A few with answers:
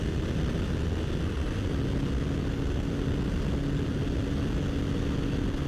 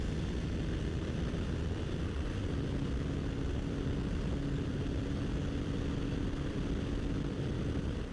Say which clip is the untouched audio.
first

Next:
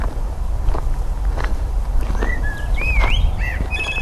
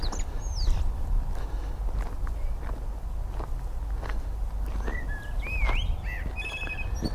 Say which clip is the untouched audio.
second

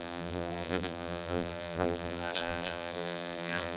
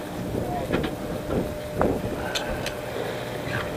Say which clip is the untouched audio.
second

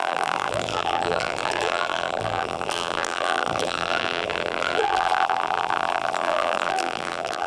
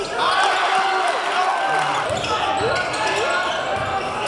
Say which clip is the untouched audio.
second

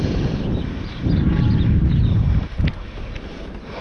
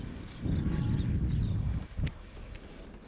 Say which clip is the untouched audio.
second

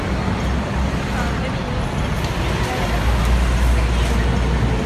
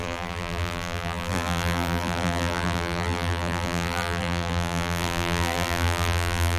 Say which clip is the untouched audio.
first